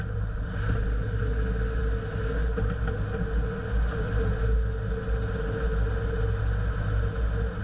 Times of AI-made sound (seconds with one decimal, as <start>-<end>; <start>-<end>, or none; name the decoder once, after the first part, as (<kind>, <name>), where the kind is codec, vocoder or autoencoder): none

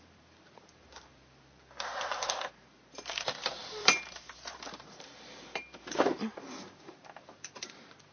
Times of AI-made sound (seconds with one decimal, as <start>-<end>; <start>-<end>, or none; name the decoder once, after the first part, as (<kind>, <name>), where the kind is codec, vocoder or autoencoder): 0.0-8.1 (vocoder, BigVGAN v2)

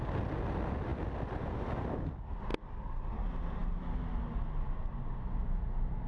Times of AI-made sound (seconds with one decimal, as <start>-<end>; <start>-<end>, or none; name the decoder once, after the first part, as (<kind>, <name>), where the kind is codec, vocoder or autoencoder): none

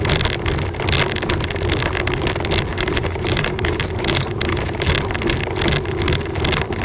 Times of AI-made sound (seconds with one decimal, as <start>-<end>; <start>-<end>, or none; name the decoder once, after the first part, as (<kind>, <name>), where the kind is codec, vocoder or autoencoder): 2.7-4.9 (vocoder, BigVGAN v2)

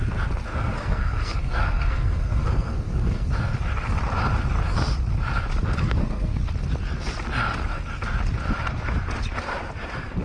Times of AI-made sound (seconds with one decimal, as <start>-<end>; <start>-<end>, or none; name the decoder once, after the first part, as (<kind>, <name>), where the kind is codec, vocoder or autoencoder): 0.5-3.3 (codec, SNAC); 5.6-6.4

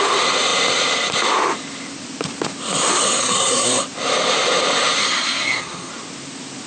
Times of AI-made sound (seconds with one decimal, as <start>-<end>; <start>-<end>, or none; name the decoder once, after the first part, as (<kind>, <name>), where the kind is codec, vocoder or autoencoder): 3.2-3.8 (codec, SNAC); 5.0-5.9

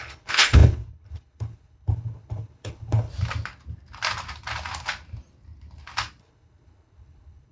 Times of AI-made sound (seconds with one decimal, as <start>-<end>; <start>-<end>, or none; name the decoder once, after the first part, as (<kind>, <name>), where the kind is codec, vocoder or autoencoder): 0.0-3.1 (codec, HILCodec); 6.2-7.5

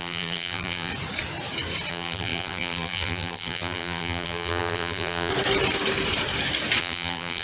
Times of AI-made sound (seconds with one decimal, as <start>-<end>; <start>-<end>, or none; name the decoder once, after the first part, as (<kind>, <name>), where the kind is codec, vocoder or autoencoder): 0.0-0.9 (vocoder, BigVGAN v2); 1.9-5.3; 6.8-7.4